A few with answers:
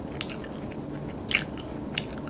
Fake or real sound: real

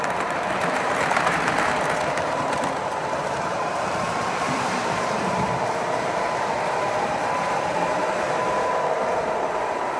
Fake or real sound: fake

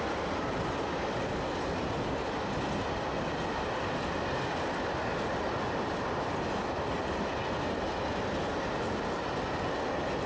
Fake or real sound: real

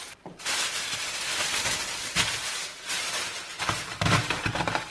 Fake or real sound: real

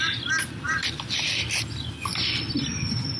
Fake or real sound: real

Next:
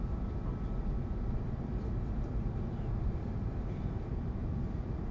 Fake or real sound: fake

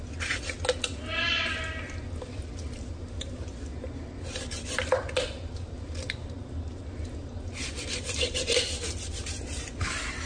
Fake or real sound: real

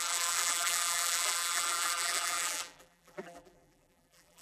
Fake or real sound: fake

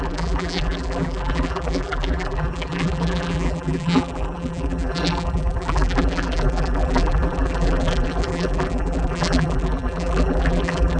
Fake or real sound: fake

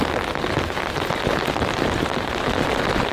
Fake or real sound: real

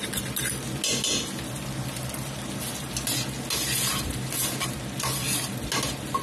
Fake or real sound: real